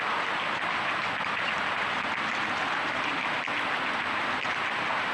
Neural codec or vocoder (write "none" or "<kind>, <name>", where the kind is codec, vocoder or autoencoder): none